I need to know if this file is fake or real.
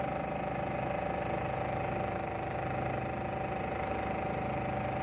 real